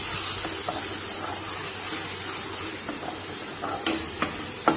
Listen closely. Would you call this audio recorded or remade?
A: recorded